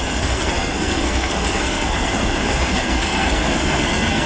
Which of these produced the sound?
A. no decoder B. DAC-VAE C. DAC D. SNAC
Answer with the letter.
D